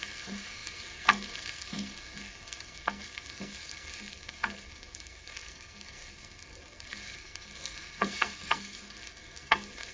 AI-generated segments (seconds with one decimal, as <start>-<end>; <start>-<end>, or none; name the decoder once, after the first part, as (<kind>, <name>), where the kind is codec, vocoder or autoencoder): 0.0-9.9 (codec, SNAC)